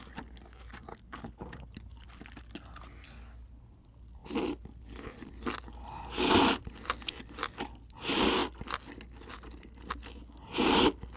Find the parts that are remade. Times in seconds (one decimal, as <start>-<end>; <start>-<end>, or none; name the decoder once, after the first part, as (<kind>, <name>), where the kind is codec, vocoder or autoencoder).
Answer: 0.9-1.6 (codec, HILCodec)